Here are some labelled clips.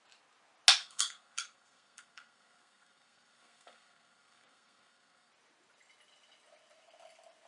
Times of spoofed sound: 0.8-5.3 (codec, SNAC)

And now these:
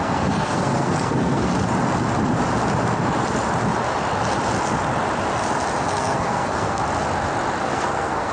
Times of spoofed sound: 0.0-1.5 (codec, SNAC); 5.9-6.8; 7.6-8.3

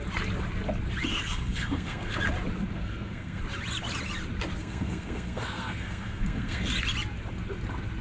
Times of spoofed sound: 1.1-2.2 (codec, SNAC); 2.7-3.4; 4.6-6.7

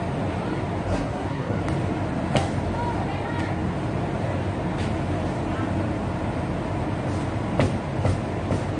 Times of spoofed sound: 0.9-1.6 (codec, SNAC)

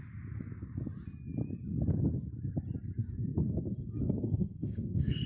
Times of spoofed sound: 3.0-5.3 (codec, SNAC)